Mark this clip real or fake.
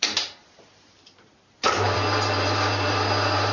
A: fake